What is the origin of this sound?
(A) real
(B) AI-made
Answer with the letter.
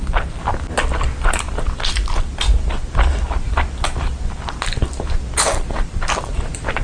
A